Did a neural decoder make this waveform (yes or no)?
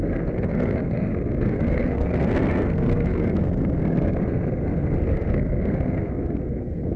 yes